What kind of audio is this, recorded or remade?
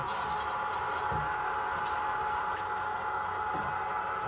recorded